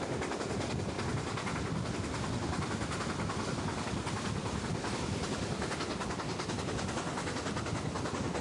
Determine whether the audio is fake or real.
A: real